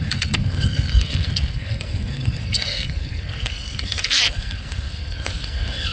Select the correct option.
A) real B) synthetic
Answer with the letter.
B